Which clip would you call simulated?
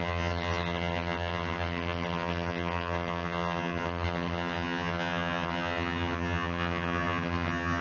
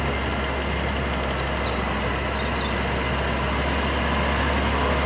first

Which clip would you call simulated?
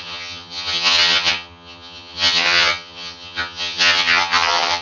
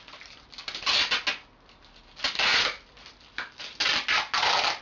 first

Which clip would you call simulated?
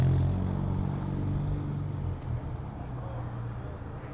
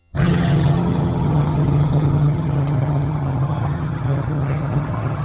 second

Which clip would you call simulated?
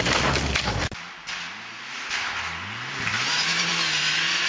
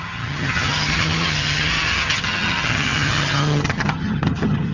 second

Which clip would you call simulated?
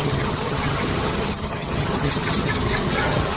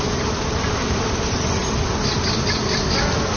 first